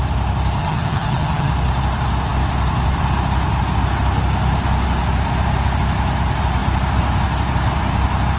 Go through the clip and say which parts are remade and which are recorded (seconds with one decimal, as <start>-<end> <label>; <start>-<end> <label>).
0.0-0.6 recorded; 0.6-1.5 remade; 1.5-8.4 recorded